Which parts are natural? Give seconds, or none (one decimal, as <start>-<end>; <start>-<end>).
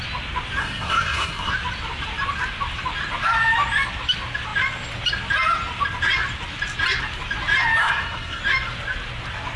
0.0-0.6; 1.5-7.8; 8.4-9.6